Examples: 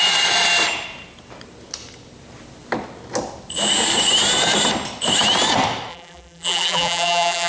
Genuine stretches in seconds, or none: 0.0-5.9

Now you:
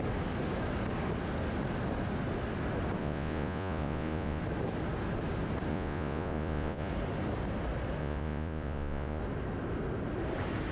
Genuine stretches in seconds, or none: 0.0-3.0; 4.4-5.7; 6.9-8.0; 9.2-10.7

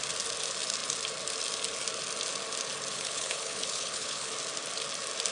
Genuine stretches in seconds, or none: 0.0-2.9; 4.3-5.3

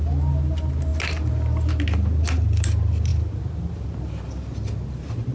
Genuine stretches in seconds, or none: 0.0-5.3

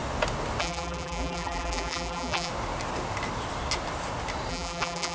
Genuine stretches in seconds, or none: 0.0-0.6; 2.5-4.5

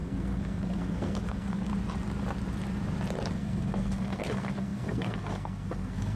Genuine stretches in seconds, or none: 1.7-3.3

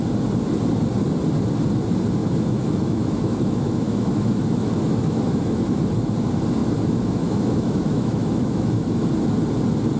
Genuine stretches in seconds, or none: 0.0-2.2; 5.6-6.6; 9.0-10.0

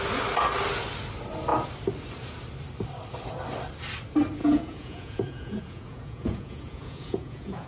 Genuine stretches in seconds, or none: 0.0-4.4